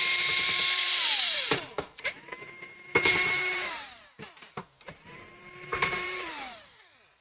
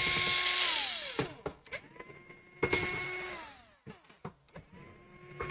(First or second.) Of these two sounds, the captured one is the second